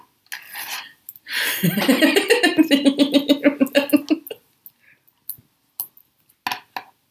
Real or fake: real